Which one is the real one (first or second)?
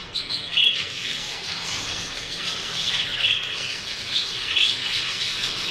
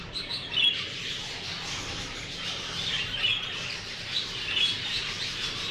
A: second